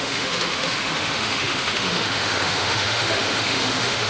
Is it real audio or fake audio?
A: fake